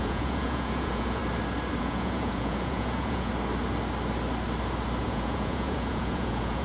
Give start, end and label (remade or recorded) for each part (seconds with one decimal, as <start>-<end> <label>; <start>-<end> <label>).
0.0-1.2 remade; 1.2-1.8 recorded; 1.8-3.3 remade; 3.3-5.0 recorded; 5.0-6.6 remade